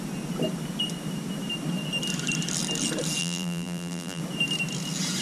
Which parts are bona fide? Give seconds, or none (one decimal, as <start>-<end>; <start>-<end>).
0.0-3.2; 4.2-5.2